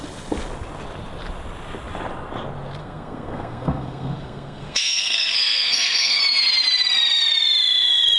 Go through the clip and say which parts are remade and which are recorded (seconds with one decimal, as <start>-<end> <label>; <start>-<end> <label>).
0.0-2.8 recorded; 2.8-6.2 remade; 6.2-8.2 recorded